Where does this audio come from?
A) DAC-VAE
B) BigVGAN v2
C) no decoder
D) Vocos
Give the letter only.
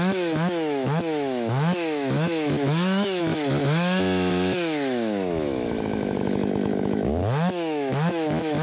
A